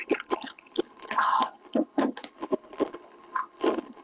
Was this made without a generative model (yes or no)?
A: no